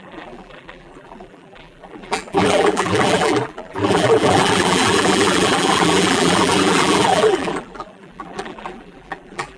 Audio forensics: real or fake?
fake